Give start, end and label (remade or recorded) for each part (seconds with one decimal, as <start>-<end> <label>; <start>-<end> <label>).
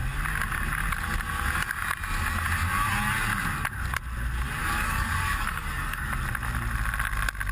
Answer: 0.0-4.6 recorded; 4.6-6.1 remade; 6.1-7.5 recorded